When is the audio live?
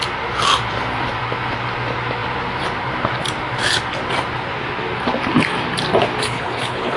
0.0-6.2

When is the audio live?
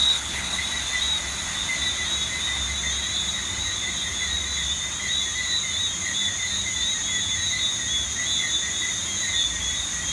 0.6-10.1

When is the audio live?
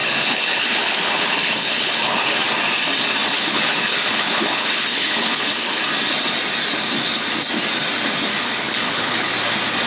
2.4-3.3; 5.8-8.4; 9.3-9.9